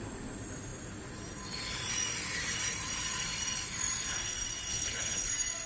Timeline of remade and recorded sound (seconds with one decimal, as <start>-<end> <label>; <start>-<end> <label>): 0.0-4.7 recorded; 4.7-5.3 remade; 5.3-5.7 recorded